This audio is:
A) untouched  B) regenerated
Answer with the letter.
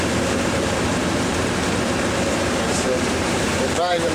B